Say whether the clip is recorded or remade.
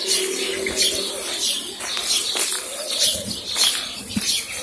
recorded